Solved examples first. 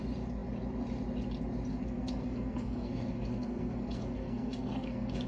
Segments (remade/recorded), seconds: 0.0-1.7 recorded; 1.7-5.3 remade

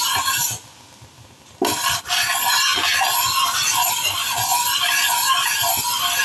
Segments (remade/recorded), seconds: 0.0-6.2 recorded